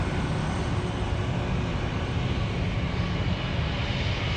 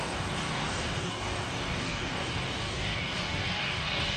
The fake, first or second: second